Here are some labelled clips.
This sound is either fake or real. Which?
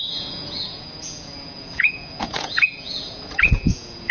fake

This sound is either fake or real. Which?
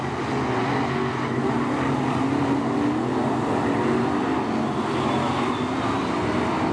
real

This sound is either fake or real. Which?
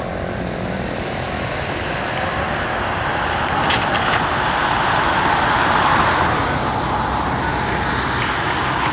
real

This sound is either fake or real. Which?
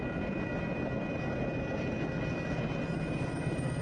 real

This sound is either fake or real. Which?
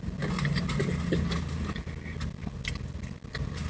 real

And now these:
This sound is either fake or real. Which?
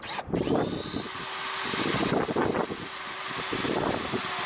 real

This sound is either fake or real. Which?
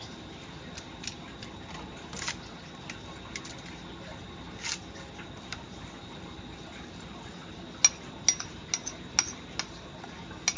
real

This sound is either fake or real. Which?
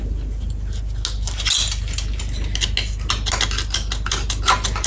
real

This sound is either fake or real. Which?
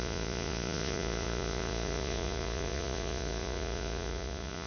fake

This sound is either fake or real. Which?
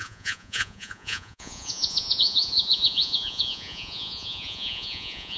fake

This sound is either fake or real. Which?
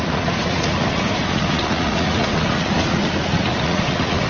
fake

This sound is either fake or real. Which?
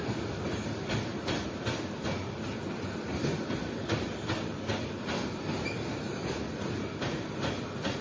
real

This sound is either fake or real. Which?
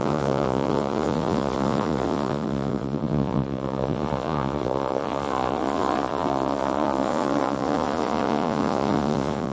fake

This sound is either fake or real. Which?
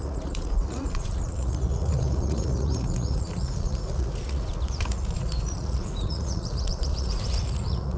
fake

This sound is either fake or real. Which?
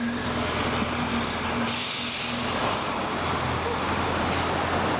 real